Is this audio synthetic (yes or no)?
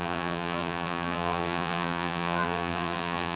yes